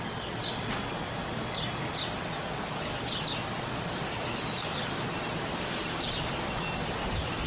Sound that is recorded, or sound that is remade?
recorded